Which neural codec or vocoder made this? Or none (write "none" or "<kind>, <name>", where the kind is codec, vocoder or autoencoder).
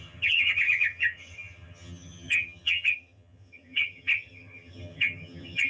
vocoder, HiFi-GAN